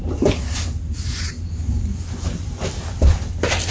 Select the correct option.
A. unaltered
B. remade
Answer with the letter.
A